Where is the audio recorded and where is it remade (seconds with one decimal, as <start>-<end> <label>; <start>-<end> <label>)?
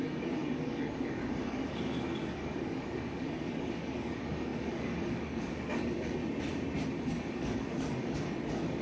0.0-6.2 remade; 6.2-6.9 recorded; 6.9-8.8 remade